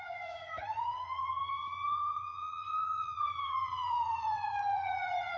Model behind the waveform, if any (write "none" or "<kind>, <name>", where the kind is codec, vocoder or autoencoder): vocoder, Vocos